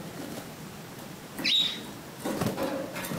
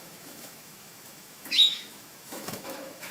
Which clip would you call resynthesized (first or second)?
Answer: second